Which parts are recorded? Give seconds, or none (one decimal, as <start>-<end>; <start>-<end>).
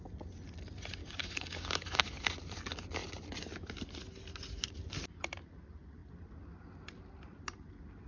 0.0-1.0; 2.3-8.1